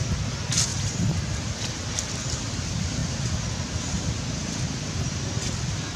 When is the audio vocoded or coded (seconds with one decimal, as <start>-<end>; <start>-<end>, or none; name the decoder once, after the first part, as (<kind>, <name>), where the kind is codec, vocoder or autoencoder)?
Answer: 0.7-1.4 (vocoder, BigVGAN v2); 4.4-5.5